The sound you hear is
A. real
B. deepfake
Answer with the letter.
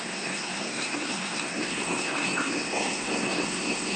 B